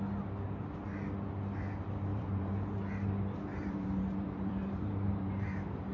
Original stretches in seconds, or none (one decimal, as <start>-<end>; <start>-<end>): 0.0-2.1; 2.8-3.5